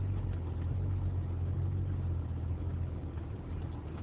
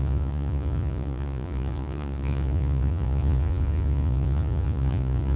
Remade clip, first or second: second